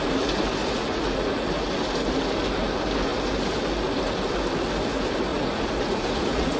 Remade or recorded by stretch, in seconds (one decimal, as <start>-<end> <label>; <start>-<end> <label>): 0.0-0.6 recorded; 0.6-1.5 remade; 1.5-5.3 recorded; 5.3-6.6 remade